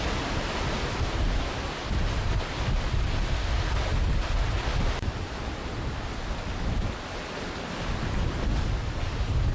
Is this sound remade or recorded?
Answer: recorded